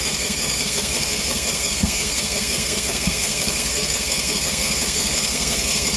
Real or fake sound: fake